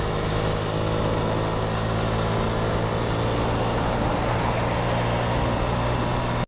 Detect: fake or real real